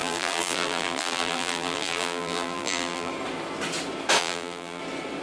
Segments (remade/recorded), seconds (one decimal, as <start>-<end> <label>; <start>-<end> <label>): 0.0-3.1 remade; 3.1-4.2 recorded; 4.2-4.8 remade; 4.8-5.2 recorded